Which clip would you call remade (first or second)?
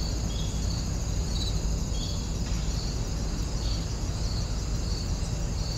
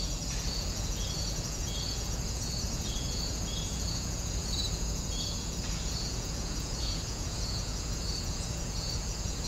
second